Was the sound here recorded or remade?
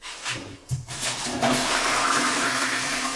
remade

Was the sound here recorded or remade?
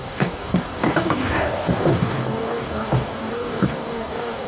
remade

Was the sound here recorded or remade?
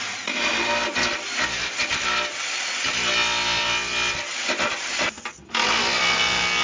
recorded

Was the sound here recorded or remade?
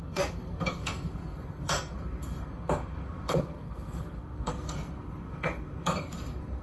remade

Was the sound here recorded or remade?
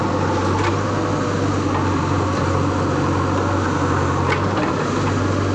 recorded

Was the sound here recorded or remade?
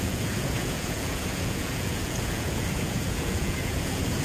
remade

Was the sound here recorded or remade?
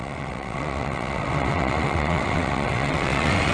remade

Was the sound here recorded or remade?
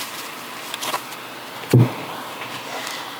recorded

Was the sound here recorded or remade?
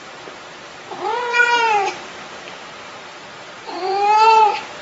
remade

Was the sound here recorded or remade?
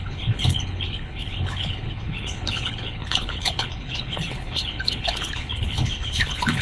remade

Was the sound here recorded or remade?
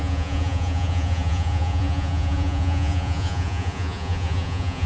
remade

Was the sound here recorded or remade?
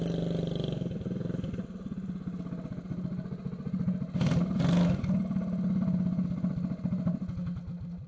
recorded